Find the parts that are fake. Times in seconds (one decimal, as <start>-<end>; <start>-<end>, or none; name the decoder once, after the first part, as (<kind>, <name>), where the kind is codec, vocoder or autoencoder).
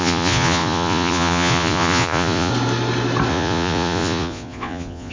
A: 0.0-2.5 (vocoder, Vocos); 3.3-5.1